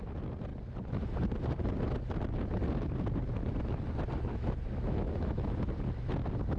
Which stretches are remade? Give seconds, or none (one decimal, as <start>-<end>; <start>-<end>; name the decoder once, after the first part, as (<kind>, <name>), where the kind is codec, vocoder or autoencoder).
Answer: 4.3-5.7 (autoencoder, DAC-VAE)